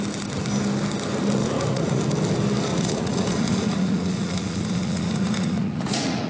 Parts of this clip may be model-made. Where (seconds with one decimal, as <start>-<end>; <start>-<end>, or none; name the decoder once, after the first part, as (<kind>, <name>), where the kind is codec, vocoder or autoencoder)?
1.4-2.0 (vocoder, Vocos); 2.7-6.3